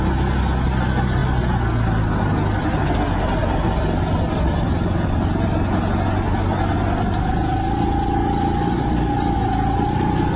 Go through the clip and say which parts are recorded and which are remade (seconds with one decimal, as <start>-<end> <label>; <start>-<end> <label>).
0.0-10.4 recorded